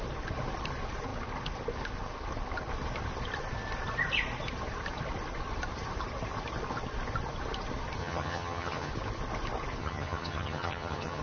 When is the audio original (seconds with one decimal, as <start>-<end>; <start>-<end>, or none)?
0.0-8.0; 8.9-9.8

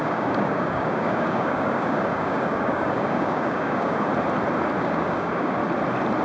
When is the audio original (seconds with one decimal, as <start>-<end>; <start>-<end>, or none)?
4.1-4.8; 5.6-6.2

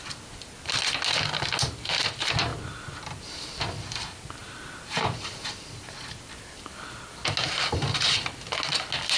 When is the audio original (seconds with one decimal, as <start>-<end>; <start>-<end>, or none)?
0.0-9.2

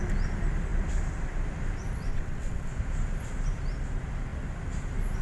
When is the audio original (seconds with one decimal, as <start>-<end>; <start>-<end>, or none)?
0.0-2.1; 2.7-5.2

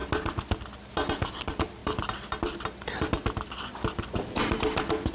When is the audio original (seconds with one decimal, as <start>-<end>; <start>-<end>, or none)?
0.9-1.8; 4.6-5.1

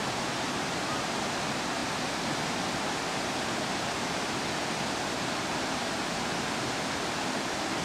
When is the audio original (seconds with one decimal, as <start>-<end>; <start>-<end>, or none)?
0.0-7.8